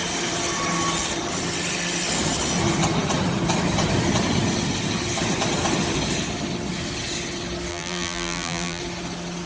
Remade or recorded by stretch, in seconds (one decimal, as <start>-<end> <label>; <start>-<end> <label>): 0.0-7.7 recorded; 7.7-8.8 remade; 8.8-9.5 recorded